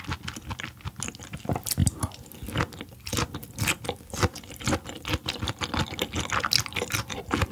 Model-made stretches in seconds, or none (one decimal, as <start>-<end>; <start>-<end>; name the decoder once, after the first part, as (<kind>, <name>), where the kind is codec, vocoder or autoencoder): none